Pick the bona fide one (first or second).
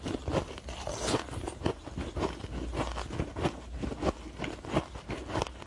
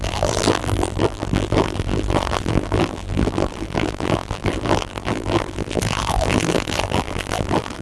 first